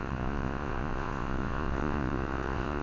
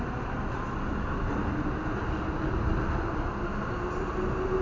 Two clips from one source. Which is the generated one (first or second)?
first